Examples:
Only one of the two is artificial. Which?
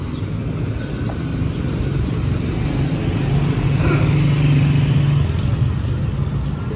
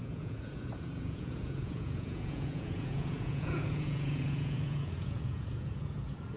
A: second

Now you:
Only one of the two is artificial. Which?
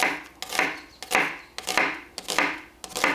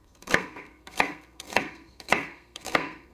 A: second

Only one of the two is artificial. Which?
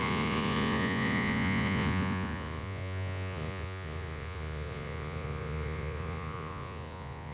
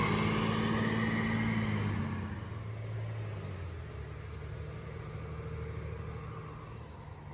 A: first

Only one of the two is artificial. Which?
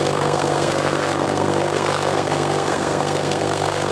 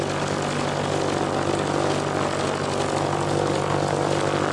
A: first